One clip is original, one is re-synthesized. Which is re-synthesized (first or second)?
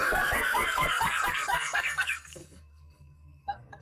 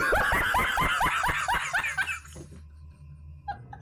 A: first